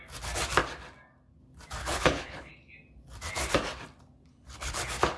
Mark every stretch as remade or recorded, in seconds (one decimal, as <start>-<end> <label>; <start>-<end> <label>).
0.0-1.8 recorded; 1.8-2.5 remade; 2.5-4.3 recorded; 4.3-4.8 remade; 4.8-5.2 recorded